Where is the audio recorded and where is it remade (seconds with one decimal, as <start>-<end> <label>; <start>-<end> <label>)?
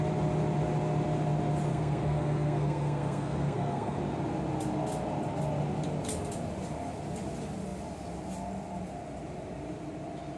0.0-1.7 recorded; 1.7-4.0 remade; 4.0-10.4 recorded